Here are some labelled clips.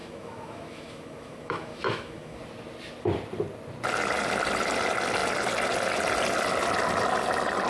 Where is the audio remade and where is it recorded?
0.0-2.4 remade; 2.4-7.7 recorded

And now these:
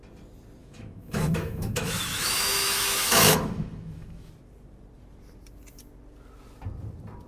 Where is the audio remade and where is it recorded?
0.0-0.6 recorded; 0.6-4.3 remade; 4.3-7.3 recorded